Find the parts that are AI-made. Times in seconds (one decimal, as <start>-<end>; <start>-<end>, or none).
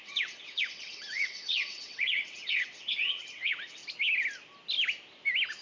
0.0-3.8